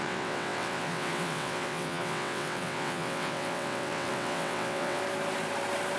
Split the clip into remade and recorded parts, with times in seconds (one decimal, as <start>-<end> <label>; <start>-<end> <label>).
0.0-5.0 remade; 5.0-6.0 recorded